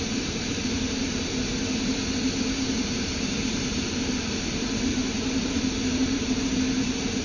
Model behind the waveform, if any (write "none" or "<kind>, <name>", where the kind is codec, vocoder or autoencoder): vocoder, BigVGAN v2